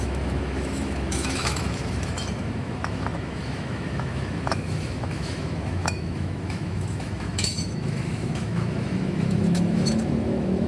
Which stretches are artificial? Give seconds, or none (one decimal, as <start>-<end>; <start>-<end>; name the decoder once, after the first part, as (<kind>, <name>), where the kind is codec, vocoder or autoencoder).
0.0-10.7 (autoencoder, DAC-VAE)